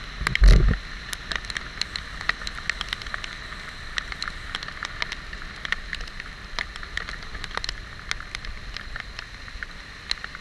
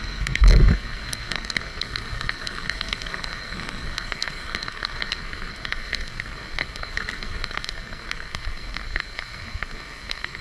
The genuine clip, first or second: first